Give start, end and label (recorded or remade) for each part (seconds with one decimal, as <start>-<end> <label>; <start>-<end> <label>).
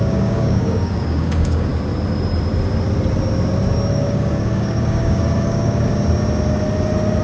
0.0-1.7 remade; 1.7-3.9 recorded; 3.9-5.9 remade; 5.9-7.2 recorded